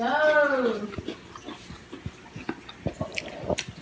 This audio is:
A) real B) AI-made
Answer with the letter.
A